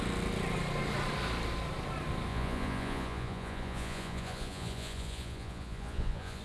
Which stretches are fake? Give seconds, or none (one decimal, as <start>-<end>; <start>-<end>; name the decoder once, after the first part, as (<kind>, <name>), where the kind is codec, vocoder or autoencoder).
2.3-6.4 (vocoder, Vocos)